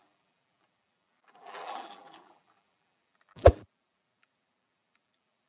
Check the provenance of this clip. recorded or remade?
remade